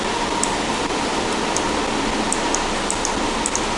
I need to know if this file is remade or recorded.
recorded